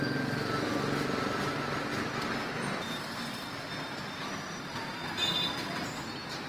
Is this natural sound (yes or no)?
yes